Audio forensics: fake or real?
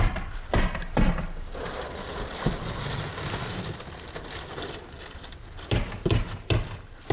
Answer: real